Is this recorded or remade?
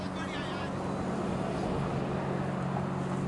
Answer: recorded